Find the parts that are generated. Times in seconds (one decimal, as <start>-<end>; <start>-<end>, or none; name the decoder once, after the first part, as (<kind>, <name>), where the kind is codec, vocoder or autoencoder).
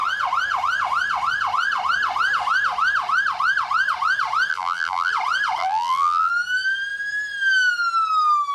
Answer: 4.5-5.1 (vocoder, BigVGAN v2); 5.6-6.3